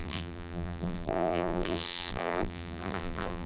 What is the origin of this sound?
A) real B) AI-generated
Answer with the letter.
B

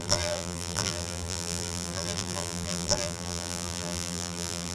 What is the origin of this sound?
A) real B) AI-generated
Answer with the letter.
B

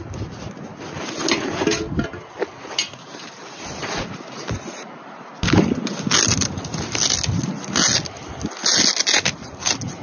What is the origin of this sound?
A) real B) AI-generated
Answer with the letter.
A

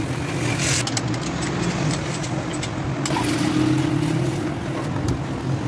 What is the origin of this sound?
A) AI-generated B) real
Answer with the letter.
B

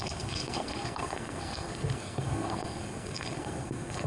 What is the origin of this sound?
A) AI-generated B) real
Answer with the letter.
A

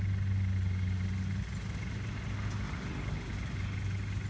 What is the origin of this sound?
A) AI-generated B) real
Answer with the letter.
B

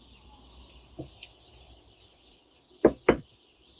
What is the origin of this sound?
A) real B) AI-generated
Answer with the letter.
B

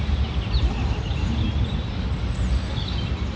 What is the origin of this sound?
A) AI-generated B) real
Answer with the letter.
B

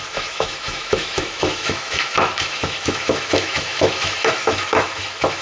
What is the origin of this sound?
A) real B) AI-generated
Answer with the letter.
B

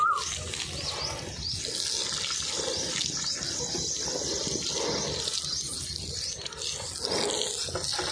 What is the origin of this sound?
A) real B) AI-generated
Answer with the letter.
A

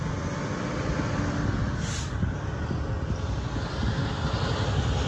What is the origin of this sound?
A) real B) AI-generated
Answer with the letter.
A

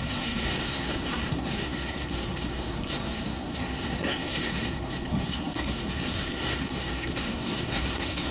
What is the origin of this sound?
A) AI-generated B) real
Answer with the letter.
A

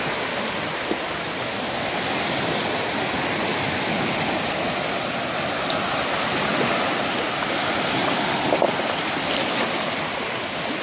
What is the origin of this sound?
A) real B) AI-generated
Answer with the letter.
A